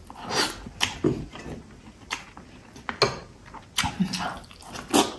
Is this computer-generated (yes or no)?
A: no